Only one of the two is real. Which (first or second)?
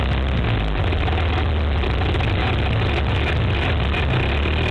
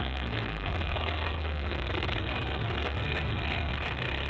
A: first